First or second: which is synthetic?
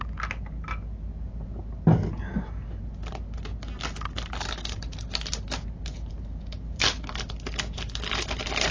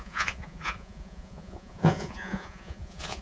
second